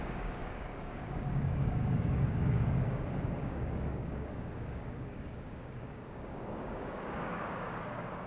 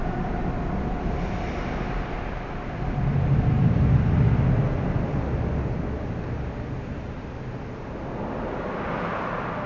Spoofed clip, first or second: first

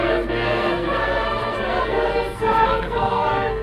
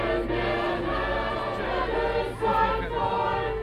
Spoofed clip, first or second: first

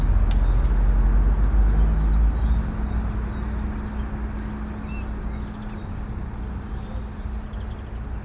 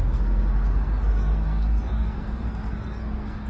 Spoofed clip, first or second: second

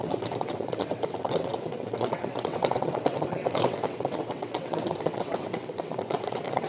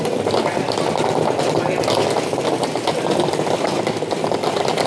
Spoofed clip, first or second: first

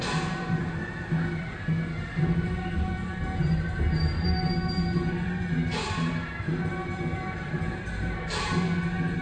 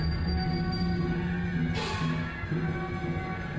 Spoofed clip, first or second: first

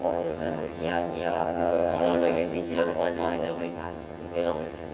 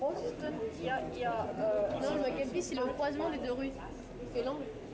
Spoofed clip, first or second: first